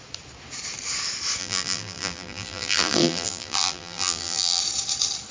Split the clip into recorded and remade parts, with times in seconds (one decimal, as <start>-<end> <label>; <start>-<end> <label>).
0.0-1.4 recorded; 1.4-4.6 remade; 4.6-5.3 recorded